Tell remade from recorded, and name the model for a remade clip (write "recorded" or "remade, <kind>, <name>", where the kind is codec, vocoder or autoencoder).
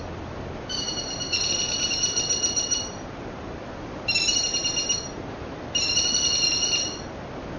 recorded